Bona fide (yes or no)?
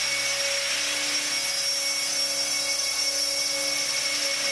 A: yes